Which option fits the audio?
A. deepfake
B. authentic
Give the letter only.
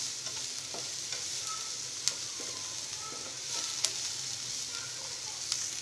B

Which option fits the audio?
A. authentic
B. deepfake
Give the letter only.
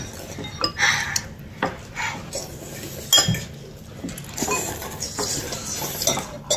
A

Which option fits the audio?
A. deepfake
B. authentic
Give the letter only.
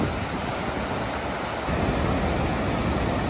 B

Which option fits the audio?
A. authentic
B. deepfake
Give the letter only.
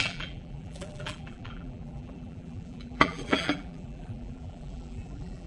B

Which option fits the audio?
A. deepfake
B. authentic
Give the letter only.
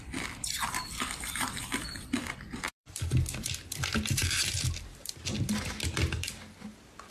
A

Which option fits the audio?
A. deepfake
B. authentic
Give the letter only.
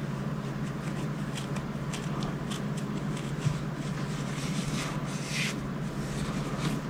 B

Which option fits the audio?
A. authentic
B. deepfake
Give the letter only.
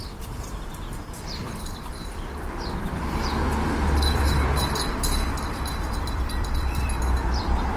B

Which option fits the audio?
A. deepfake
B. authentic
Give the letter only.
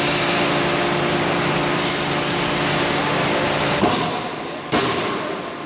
B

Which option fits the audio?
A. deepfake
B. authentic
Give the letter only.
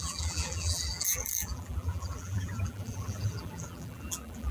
A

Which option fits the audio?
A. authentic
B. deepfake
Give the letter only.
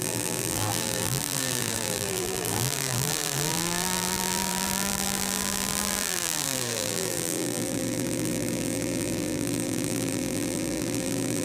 B